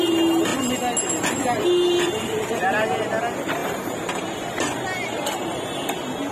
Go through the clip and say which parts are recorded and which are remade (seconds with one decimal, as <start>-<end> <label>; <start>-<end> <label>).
0.0-3.6 recorded; 3.6-5.7 remade; 5.7-6.3 recorded